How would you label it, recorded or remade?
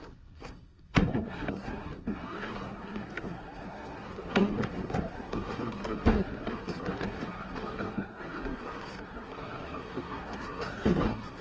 remade